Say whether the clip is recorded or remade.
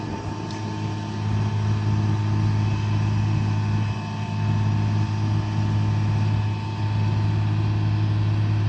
recorded